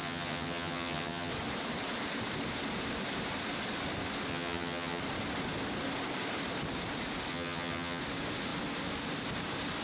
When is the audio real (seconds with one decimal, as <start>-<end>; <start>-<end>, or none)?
1.3-4.3; 5.0-7.3; 8.0-9.8